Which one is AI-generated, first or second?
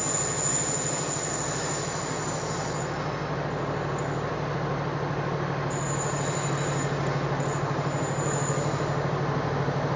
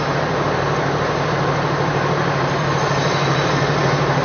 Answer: second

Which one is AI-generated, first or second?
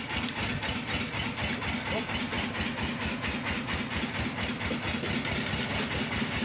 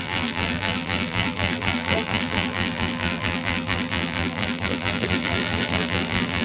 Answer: second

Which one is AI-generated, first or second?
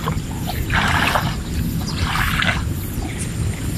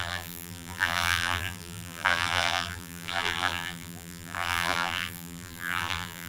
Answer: second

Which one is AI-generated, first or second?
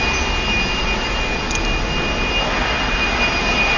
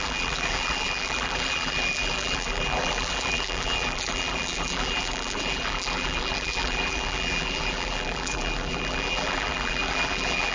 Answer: second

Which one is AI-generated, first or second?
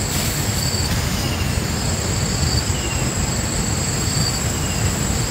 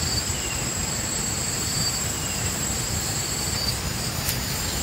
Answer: second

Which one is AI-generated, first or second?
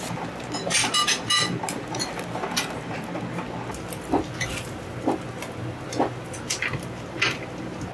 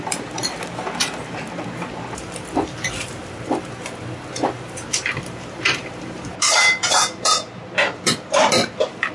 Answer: second